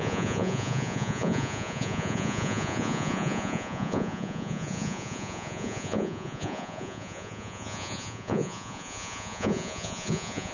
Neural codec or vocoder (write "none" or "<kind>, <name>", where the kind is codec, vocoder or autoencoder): vocoder, Vocos